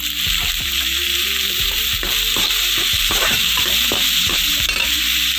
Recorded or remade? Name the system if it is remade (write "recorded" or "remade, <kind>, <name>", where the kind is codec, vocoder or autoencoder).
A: remade, vocoder, BigVGAN v2